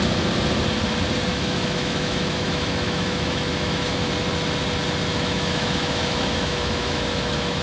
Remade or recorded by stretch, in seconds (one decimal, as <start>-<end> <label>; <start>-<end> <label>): 0.0-1.3 recorded; 1.3-4.1 remade; 4.1-5.1 recorded; 5.1-7.6 remade